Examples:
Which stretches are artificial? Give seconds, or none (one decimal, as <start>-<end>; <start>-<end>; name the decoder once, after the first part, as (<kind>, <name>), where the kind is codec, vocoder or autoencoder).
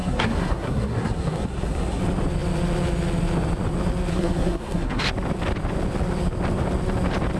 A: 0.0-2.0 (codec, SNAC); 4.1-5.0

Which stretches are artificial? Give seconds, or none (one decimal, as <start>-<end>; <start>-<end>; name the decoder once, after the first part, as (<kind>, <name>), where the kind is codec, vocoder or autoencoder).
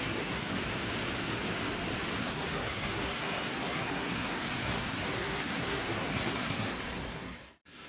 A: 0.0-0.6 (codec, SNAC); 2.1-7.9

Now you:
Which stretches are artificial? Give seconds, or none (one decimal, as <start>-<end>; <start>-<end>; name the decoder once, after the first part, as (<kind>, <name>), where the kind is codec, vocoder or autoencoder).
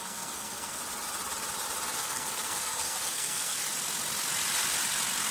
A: 0.0-0.8 (codec, SNAC); 2.0-3.6